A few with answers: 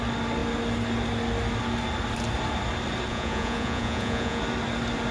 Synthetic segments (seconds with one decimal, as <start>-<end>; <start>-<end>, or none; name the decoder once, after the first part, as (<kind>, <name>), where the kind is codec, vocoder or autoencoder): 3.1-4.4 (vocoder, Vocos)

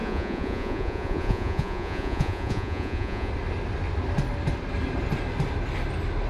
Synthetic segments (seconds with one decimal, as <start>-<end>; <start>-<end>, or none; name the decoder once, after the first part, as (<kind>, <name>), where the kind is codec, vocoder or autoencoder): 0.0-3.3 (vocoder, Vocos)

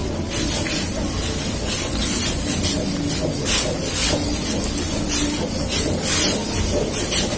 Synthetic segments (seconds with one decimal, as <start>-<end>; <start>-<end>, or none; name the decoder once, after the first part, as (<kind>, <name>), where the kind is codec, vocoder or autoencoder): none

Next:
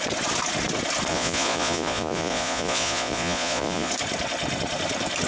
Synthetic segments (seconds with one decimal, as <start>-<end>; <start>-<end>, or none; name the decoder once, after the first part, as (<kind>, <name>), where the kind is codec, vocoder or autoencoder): 1.1-3.9 (vocoder, Vocos)